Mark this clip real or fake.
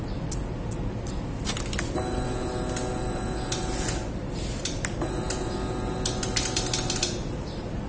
real